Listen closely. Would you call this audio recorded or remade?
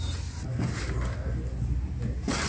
recorded